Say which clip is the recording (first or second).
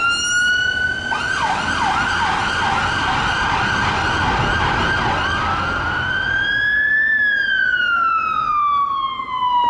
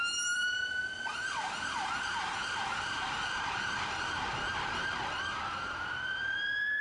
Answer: first